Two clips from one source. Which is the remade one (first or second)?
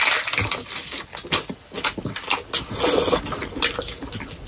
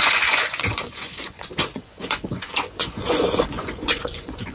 second